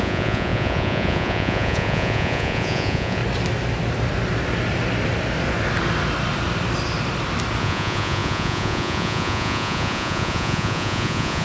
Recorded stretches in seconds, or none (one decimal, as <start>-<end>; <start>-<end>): 3.2-7.6